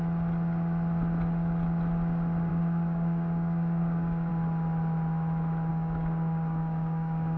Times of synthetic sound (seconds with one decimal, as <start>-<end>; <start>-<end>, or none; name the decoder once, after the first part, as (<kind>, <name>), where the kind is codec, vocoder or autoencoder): 2.5-4.3 (codec, DAC); 5.7-7.4